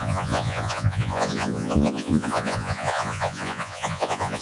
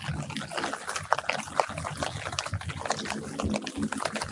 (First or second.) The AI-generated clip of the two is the first